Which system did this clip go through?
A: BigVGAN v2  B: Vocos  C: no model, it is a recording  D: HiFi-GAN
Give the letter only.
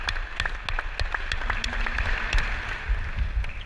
C